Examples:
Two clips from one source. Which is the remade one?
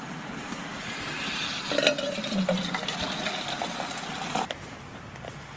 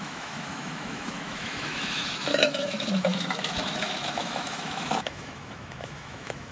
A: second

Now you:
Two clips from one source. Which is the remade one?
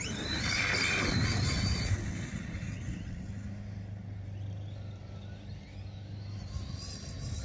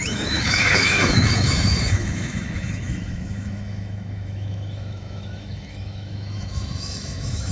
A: second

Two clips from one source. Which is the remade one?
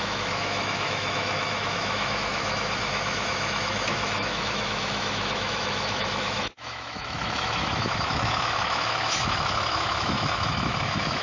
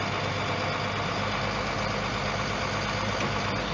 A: first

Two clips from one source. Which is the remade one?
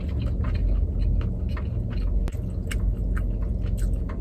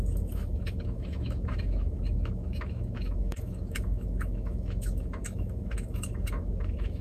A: second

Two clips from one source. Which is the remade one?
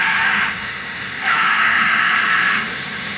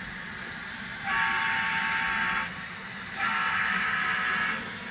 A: first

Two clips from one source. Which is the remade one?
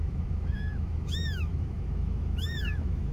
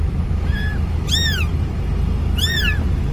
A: first